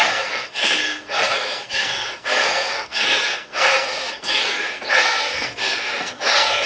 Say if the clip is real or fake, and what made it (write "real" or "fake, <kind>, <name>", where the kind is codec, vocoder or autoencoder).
fake, codec, SNAC